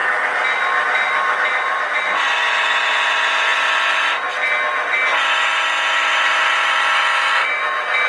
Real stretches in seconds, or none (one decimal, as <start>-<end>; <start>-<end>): 2.9-6.3; 6.9-8.1